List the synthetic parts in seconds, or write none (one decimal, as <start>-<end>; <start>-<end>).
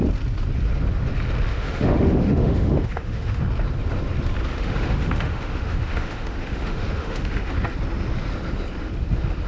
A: 1.5-3.4; 4.5-7.5